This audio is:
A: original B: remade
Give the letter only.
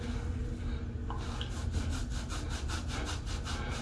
A